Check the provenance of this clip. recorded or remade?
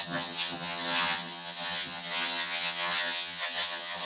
remade